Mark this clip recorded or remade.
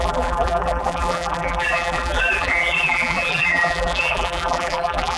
remade